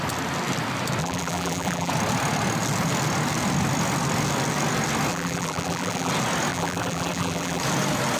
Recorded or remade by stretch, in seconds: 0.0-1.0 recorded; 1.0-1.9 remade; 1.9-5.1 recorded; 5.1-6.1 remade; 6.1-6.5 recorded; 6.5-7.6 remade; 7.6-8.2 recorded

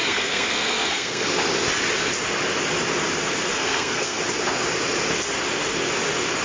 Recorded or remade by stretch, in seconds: 0.0-1.3 remade; 1.3-3.5 recorded; 3.5-4.2 remade; 4.2-6.4 recorded